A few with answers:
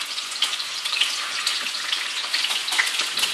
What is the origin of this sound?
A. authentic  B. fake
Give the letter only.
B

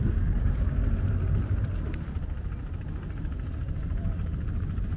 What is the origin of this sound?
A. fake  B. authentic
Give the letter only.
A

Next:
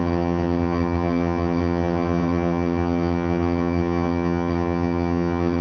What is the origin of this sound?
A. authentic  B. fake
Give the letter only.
B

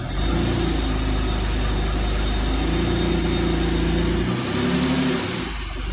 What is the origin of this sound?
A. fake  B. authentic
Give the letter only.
B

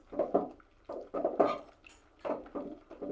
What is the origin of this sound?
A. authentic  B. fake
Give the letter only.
A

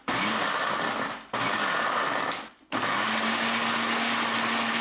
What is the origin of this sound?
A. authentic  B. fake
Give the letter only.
A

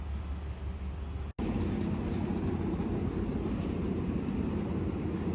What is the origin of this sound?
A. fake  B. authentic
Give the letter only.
B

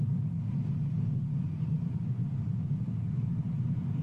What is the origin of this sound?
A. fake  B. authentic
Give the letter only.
B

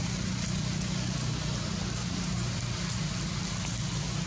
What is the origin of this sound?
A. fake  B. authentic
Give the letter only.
B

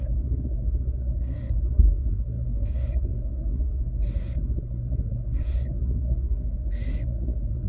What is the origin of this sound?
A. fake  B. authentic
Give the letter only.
A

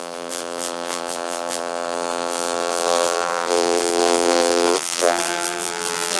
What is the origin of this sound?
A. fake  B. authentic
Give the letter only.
A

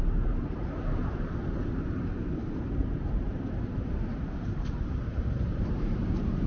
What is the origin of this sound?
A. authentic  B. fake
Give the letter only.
B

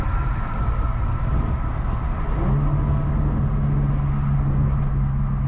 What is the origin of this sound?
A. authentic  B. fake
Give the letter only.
A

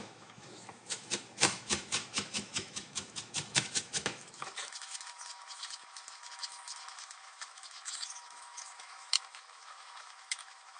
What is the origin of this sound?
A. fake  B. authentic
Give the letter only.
A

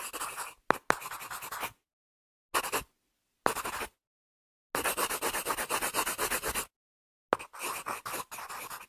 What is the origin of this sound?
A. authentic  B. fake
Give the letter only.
A